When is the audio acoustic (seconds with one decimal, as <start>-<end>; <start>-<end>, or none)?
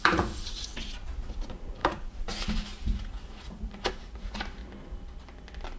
4.6-5.8